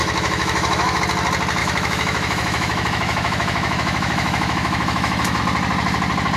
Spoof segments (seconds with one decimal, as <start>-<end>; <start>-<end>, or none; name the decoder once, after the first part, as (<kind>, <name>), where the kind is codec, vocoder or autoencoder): 0.0-1.0 (autoencoder, DAC-VAE); 1.6-5.4